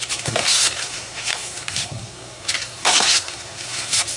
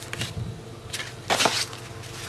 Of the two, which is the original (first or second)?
second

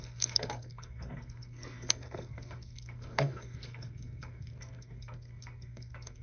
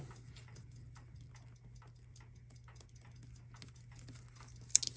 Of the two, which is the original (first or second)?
second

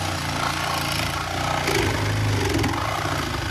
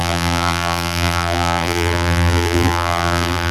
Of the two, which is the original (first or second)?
first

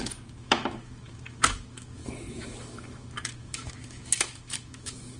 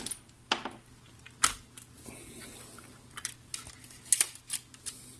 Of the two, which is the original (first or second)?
second